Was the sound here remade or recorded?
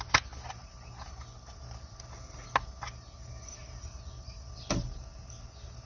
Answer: recorded